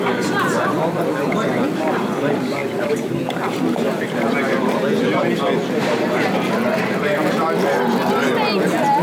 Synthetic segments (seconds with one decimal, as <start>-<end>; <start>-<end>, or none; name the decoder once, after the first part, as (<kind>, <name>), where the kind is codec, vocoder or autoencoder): none